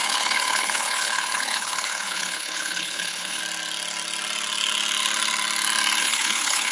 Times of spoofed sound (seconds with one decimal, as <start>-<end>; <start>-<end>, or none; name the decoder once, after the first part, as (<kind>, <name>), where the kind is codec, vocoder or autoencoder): 0.0-3.4 (codec, HILCodec); 6.0-6.7

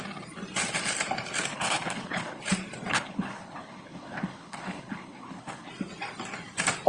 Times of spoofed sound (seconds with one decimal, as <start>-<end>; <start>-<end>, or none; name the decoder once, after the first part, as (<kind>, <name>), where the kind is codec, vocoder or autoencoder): 1.5-2.4 (codec, HILCodec); 2.9-5.7

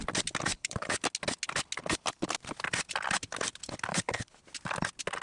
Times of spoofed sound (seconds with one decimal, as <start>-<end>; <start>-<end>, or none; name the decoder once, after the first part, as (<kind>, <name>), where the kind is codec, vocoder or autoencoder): 0.5-1.0 (codec, HILCodec); 3.9-4.4

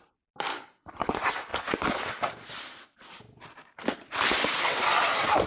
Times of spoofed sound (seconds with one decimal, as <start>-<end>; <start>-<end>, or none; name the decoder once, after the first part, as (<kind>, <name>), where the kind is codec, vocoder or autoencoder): 0.5-1.1 (codec, HILCodec)